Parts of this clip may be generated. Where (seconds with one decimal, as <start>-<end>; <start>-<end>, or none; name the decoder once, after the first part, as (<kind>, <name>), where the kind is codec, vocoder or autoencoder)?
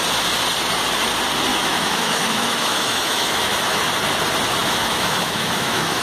1.5-3.8 (autoencoder, DAC-VAE); 4.6-6.0